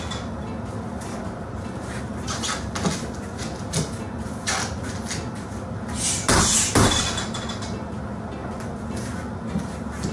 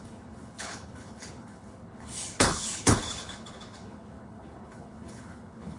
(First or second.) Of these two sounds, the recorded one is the first